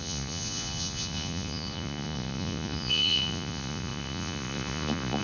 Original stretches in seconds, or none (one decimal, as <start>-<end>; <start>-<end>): none